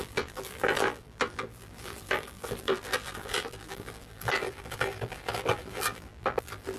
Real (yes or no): no